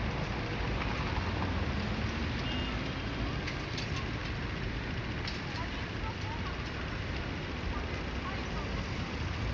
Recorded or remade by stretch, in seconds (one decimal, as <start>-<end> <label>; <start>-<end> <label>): 0.0-9.5 recorded